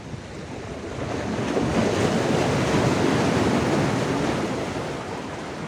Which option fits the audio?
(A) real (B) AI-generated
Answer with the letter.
A